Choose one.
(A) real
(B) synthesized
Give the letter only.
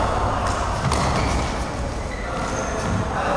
A